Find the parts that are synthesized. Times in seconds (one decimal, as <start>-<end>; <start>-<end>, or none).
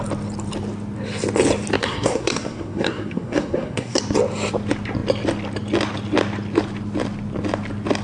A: 1.8-4.0